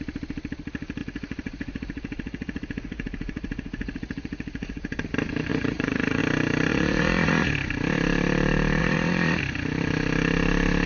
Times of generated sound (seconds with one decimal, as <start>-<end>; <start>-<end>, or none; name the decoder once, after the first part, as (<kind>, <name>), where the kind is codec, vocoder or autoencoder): 1.0-5.0 (vocoder, Vocos); 5.5-6.2; 6.7-7.5; 8.8-9.4